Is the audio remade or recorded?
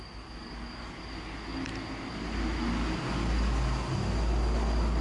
recorded